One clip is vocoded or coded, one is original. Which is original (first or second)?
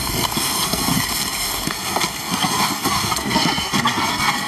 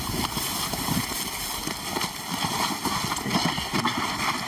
second